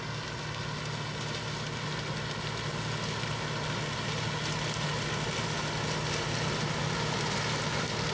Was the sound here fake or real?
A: real